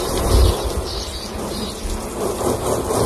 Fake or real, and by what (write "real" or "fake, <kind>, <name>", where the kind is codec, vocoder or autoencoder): real